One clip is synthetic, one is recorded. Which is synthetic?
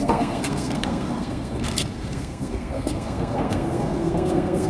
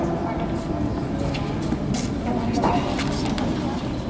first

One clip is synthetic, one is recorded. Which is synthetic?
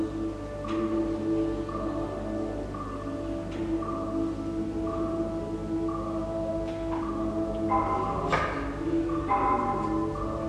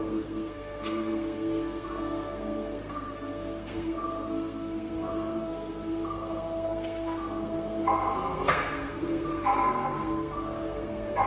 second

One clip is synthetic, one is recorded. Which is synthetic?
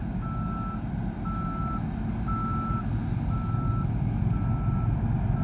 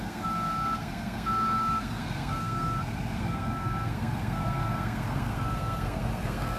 second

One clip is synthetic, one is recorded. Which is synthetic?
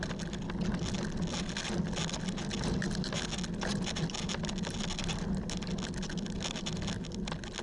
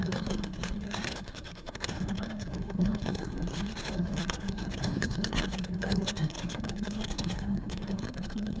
second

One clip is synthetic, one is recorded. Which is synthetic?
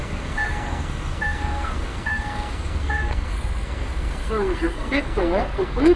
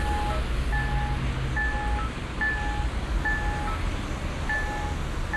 first